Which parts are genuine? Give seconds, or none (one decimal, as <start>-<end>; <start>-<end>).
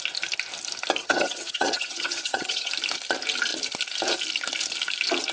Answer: 0.0-1.0; 2.7-5.3